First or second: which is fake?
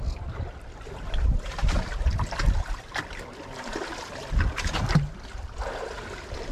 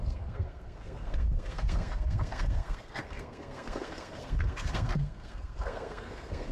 second